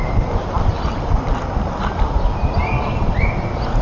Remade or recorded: recorded